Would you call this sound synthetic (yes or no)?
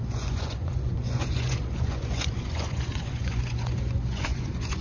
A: yes